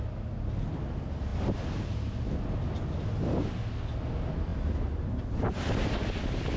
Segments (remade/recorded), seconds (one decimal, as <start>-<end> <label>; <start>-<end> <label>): 0.0-6.6 recorded